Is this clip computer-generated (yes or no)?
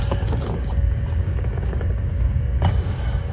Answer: yes